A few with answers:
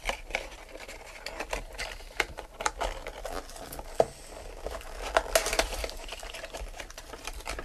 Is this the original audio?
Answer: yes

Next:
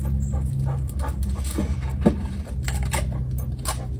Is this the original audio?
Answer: yes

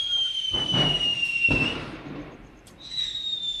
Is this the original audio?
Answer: no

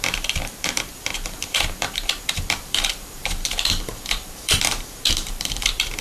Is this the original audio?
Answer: no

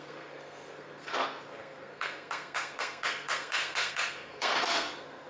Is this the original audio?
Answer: no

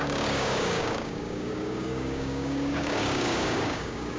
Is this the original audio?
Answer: no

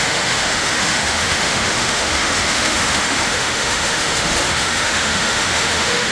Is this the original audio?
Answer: no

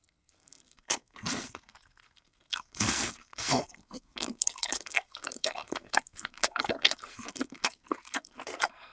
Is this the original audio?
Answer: no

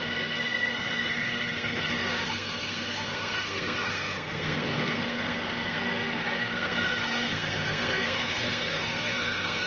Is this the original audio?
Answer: no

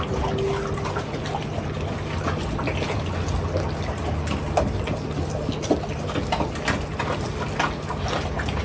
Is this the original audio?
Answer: yes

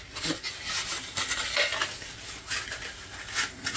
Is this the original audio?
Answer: yes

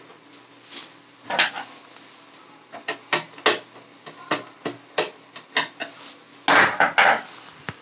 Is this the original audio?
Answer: yes